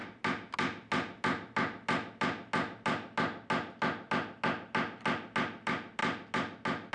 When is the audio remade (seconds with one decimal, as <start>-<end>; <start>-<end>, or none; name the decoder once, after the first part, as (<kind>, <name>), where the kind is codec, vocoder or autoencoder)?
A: none